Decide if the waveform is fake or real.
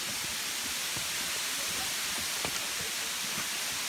real